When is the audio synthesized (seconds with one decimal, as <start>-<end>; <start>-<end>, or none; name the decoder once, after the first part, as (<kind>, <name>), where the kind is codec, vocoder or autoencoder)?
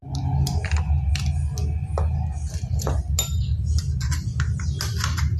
none